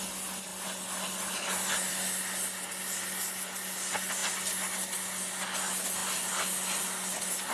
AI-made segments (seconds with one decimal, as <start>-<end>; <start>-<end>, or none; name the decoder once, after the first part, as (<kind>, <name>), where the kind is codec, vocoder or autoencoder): none